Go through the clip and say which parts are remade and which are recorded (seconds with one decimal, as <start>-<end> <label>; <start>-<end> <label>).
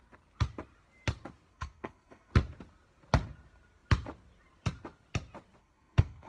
0.0-1.5 recorded; 1.5-2.3 remade; 2.3-5.6 recorded; 5.6-6.3 remade